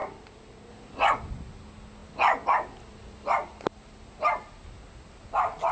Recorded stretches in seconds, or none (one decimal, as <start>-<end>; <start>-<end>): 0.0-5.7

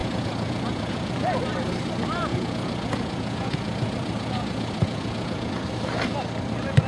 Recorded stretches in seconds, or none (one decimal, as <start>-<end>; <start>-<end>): 1.4-2.3; 5.5-6.9

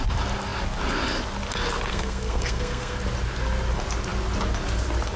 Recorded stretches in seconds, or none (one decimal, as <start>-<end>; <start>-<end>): 0.0-1.9; 3.0-5.2

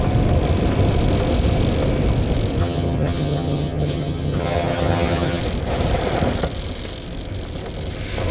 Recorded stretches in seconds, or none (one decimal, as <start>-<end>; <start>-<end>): 0.0-2.6; 5.4-8.3